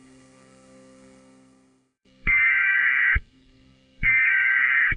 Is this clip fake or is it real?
fake